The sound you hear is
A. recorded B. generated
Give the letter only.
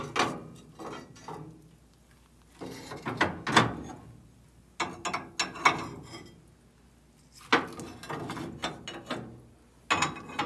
A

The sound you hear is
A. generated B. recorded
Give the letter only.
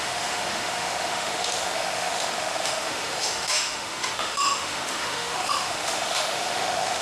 A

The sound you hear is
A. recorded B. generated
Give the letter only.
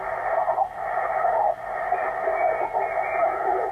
A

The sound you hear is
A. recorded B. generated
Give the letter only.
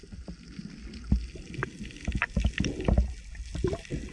A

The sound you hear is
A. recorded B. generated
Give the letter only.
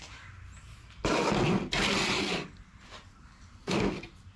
A